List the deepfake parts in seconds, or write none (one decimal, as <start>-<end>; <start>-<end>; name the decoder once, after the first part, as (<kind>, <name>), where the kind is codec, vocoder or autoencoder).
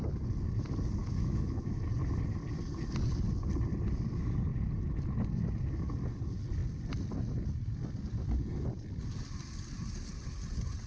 1.0-1.8 (autoencoder, DAC-VAE)